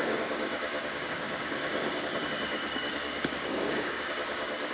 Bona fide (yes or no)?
no